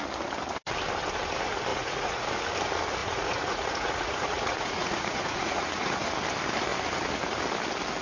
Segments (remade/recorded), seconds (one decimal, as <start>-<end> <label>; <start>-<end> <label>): 0.0-1.7 recorded; 1.7-2.3 remade; 2.3-3.0 recorded; 3.0-6.1 remade; 6.1-8.0 recorded